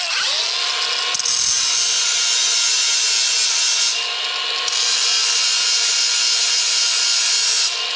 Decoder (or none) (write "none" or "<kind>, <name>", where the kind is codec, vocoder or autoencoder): none